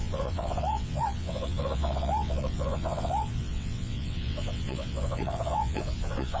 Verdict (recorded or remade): remade